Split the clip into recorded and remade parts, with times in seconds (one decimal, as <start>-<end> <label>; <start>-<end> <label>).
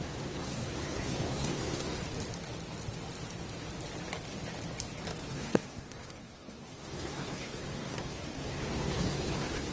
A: 0.0-2.0 remade; 2.0-5.3 recorded; 5.3-9.7 remade